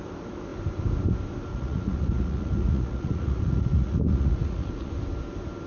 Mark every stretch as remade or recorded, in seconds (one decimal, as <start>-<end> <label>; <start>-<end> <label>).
0.0-1.5 recorded; 1.5-4.9 remade; 4.9-5.7 recorded